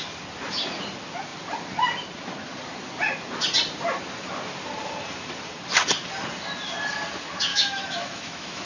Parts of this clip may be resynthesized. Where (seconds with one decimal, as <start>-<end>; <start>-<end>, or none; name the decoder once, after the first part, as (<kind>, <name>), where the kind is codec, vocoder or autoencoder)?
7.5-8.7 (autoencoder, DAC-VAE)